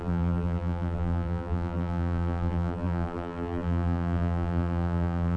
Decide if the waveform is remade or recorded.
remade